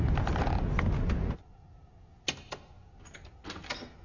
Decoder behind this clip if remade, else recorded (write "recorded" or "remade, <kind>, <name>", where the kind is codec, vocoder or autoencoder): recorded